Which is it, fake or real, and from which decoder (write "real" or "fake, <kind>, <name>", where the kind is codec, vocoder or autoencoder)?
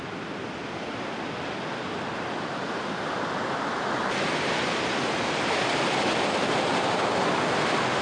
real